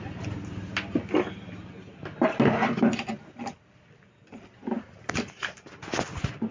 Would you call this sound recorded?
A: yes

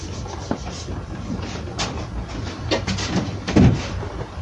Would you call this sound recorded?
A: no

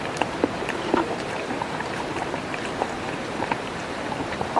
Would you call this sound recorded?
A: no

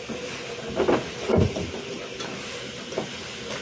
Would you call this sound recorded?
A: yes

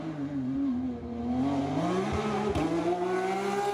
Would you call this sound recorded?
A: yes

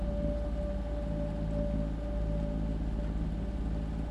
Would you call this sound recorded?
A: yes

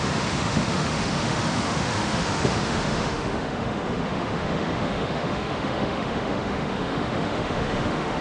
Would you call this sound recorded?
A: no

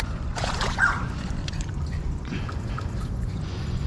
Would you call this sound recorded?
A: no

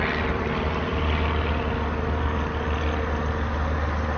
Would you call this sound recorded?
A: yes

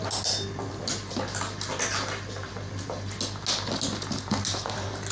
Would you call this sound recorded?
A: yes